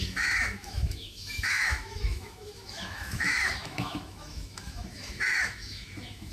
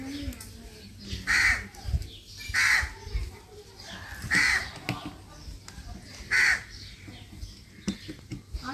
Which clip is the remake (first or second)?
first